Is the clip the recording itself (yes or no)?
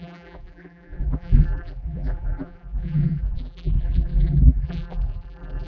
no